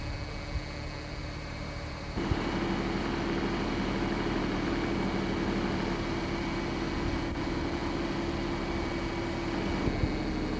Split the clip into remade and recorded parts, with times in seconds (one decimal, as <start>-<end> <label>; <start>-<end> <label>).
0.0-1.2 recorded; 1.2-2.2 remade; 2.2-10.6 recorded

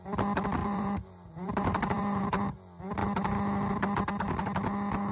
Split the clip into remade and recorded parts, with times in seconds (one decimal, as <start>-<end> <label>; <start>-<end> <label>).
0.0-0.6 recorded; 0.6-2.2 remade; 2.2-5.1 recorded

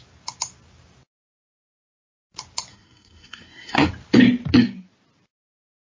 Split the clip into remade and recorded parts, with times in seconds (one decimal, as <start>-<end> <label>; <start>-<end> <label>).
0.0-2.7 recorded; 2.7-3.9 remade; 3.9-6.0 recorded

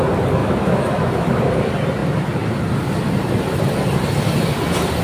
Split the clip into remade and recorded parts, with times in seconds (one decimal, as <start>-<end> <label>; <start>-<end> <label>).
0.0-0.4 recorded; 0.4-1.4 remade; 1.4-5.0 recorded

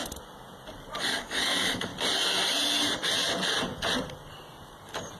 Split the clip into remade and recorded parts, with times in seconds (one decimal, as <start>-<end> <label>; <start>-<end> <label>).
0.0-1.0 recorded; 1.0-1.9 remade; 1.9-5.2 recorded

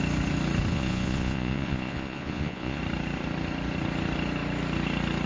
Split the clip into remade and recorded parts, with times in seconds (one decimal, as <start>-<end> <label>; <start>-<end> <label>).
0.0-0.7 recorded; 0.7-2.8 remade; 2.8-5.3 recorded